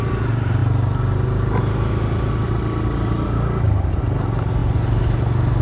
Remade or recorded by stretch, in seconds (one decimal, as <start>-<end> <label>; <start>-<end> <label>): 0.0-5.6 recorded